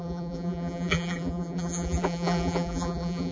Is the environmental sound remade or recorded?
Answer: remade